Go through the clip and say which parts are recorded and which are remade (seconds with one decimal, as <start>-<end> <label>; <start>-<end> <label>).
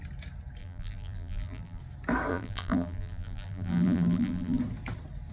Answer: 0.0-0.6 recorded; 0.6-1.8 remade; 1.8-2.3 recorded; 2.3-4.6 remade; 4.6-5.3 recorded